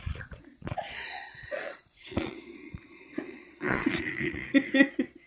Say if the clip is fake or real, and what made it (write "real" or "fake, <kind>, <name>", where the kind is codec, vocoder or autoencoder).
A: fake, vocoder, Vocos